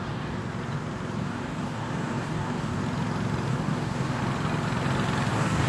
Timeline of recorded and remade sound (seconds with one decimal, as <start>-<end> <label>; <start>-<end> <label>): 0.0-0.4 remade; 0.4-1.2 recorded; 1.2-2.8 remade; 2.8-3.5 recorded; 3.5-4.2 remade; 4.2-5.3 recorded; 5.3-5.7 remade